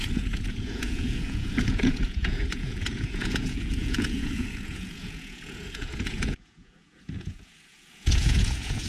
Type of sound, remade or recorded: remade